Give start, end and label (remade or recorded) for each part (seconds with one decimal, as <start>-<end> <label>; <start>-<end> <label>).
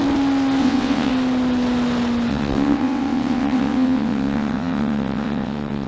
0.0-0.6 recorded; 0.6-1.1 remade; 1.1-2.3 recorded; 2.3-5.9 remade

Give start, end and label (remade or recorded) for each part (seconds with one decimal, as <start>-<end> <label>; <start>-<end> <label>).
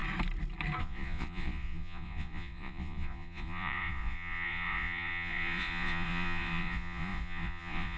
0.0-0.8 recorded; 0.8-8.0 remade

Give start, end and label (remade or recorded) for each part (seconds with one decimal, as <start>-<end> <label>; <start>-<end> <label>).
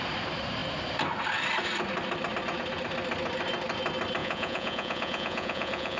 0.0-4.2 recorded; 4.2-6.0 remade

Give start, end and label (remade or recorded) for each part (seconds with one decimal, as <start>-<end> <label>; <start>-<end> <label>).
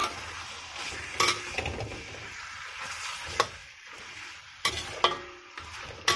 0.0-6.2 recorded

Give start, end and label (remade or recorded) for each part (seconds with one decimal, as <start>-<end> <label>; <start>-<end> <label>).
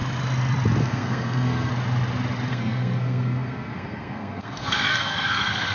0.0-0.8 recorded; 0.8-1.7 remade; 1.7-2.5 recorded; 2.5-5.7 remade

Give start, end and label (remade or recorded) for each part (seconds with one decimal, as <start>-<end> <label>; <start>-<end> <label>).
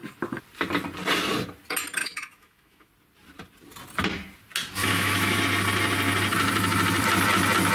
0.0-2.0 recorded; 2.0-2.9 remade; 2.9-4.8 recorded; 4.8-5.4 remade; 5.4-7.7 recorded